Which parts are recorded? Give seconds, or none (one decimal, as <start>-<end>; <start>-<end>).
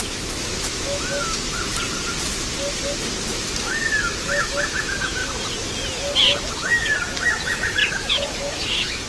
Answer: 1.7-3.2; 5.2-6.5